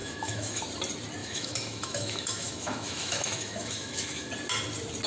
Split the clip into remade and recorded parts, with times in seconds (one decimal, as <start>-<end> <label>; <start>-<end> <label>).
0.0-0.6 remade; 0.6-1.2 recorded; 1.2-4.3 remade; 4.3-5.1 recorded